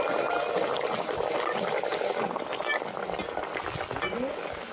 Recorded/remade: recorded